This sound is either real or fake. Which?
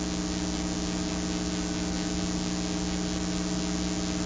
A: real